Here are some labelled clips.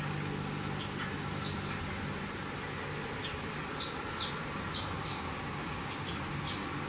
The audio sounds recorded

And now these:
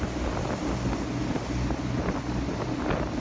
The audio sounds recorded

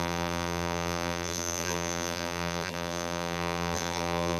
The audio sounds remade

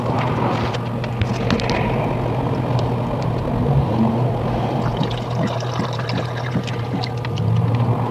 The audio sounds recorded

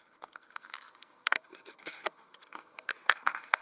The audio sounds remade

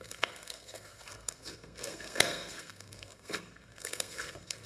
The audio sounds remade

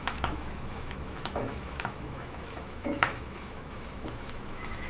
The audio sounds remade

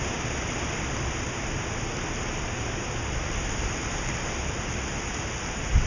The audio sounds recorded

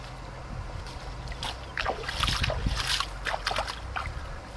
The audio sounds recorded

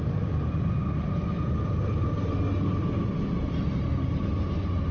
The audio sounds recorded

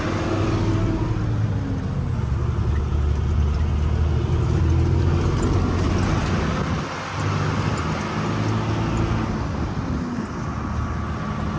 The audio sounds recorded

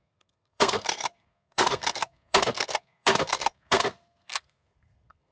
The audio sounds remade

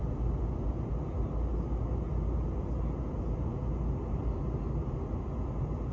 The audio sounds recorded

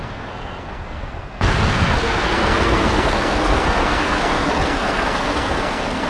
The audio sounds remade